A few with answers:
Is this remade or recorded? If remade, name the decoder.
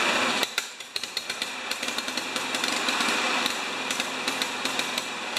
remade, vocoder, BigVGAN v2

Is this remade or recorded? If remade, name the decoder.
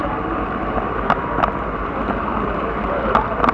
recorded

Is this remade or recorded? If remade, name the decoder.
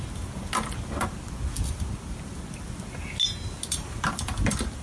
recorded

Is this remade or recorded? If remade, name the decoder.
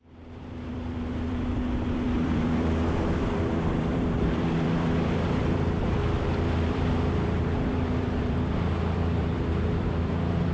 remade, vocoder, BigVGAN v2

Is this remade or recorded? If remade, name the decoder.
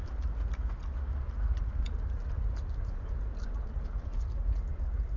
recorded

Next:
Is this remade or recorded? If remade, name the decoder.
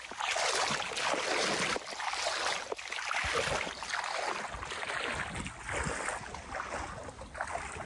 recorded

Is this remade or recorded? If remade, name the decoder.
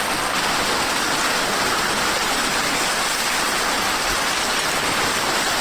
recorded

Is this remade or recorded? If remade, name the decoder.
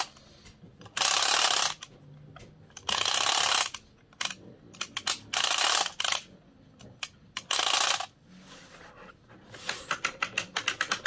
recorded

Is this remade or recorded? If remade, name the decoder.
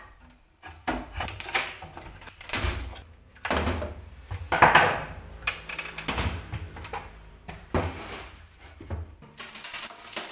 remade, vocoder, BigVGAN v2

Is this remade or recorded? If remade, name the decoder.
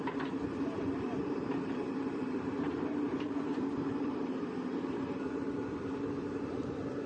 remade, vocoder, BigVGAN v2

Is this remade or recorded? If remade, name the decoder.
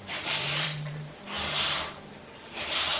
remade, vocoder, BigVGAN v2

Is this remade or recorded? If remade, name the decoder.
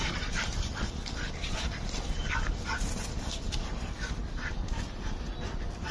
remade, vocoder, BigVGAN v2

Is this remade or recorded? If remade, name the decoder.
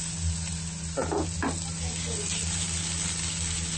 recorded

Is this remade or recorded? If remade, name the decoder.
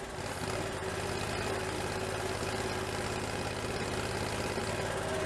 recorded